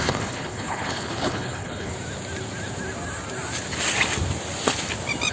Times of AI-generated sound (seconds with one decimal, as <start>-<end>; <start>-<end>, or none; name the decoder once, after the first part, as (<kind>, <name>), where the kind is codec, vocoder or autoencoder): 0.0-1.9 (codec, HILCodec)